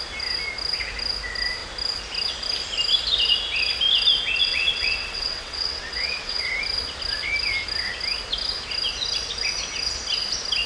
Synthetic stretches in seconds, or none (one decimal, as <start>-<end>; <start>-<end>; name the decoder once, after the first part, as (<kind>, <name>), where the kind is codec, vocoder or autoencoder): 4.4-6.4 (vocoder, WaveNeXt)